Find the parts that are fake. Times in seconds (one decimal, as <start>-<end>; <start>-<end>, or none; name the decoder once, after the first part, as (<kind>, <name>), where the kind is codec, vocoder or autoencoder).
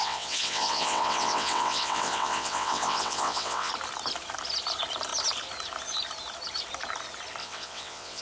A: 0.0-3.7 (vocoder, WaveNeXt); 7.4-8.2